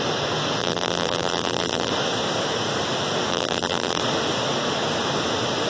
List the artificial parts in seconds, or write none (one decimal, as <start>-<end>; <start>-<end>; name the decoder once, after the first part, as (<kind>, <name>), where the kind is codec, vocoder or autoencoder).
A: 0.6-1.9 (vocoder, BigVGAN v2); 3.3-4.0